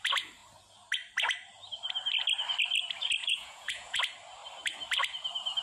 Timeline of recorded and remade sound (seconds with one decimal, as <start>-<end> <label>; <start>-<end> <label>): 0.0-3.2 recorded; 3.2-4.0 remade; 4.0-5.6 recorded